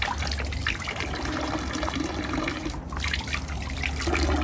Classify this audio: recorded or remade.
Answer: recorded